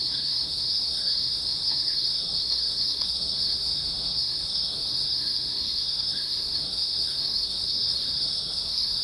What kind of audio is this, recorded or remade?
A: remade